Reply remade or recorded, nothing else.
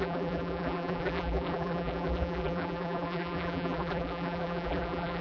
remade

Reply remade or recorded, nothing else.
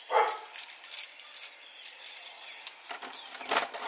recorded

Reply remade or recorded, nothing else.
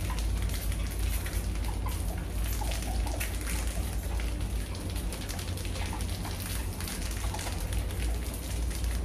recorded